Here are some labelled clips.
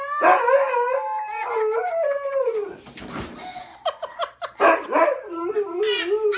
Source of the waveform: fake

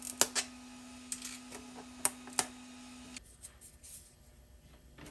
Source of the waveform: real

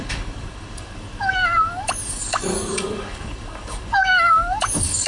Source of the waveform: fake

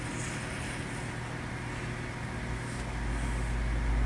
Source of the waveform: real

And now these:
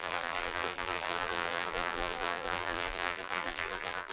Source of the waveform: fake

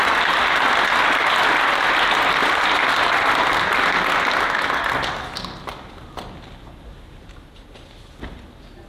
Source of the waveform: real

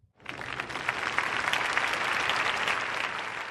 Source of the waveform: real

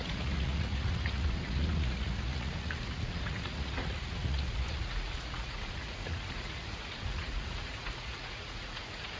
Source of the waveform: fake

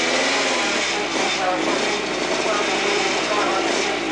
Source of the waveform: real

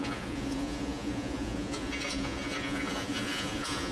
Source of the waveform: fake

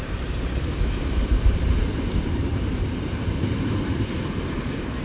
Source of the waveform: fake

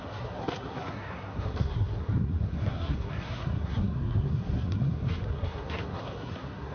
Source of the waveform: fake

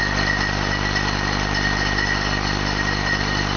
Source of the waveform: real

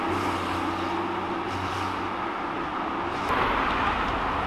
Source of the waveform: real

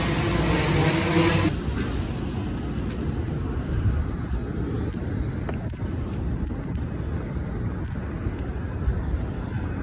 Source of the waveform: real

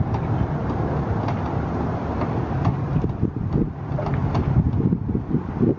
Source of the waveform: real